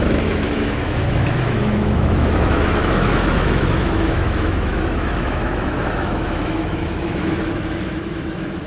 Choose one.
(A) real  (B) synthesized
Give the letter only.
B